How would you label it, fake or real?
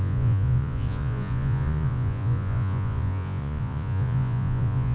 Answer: fake